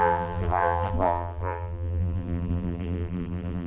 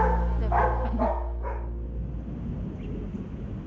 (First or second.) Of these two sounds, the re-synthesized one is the first